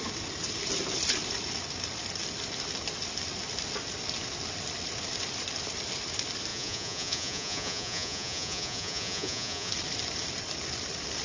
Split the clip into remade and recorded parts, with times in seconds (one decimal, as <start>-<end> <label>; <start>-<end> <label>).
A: 0.0-6.5 recorded; 6.5-9.7 remade; 9.7-11.2 recorded